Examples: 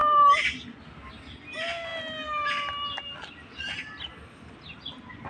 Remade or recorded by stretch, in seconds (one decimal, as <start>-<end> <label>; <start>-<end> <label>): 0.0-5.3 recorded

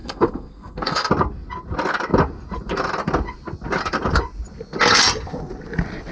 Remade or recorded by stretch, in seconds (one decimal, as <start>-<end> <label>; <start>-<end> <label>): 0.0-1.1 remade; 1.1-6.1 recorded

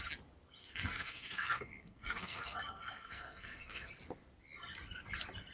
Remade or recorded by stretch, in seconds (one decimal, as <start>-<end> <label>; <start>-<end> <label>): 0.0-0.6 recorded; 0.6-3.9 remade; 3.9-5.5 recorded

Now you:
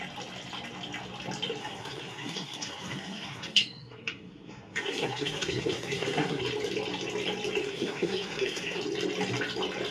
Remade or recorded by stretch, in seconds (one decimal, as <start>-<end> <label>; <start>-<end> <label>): 0.0-1.6 recorded; 1.6-6.4 remade; 6.4-7.6 recorded; 7.6-8.8 remade; 8.8-9.9 recorded

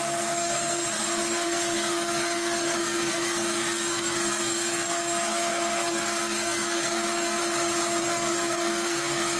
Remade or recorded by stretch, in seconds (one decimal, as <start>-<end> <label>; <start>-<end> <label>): 0.0-7.4 remade; 7.4-8.0 recorded; 8.0-9.4 remade

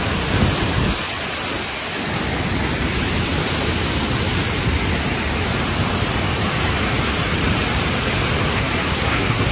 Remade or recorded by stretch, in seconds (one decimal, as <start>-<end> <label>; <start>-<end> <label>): 0.0-8.5 recorded; 8.5-9.5 remade